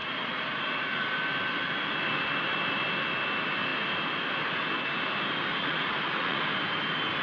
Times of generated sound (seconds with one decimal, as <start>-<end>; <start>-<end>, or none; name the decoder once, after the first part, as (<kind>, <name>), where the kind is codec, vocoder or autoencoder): 0.0-1.1 (vocoder, Vocos); 5.6-6.4